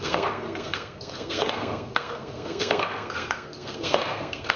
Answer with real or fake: fake